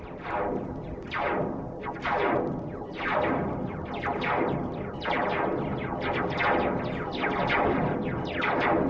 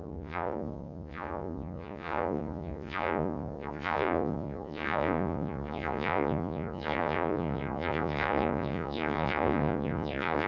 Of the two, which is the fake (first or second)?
second